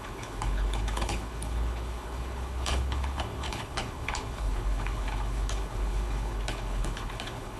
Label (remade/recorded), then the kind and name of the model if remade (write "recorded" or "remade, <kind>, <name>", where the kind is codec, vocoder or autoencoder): remade, codec, HILCodec